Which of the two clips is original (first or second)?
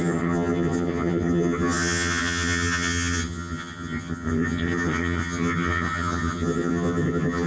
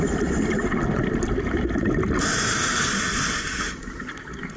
second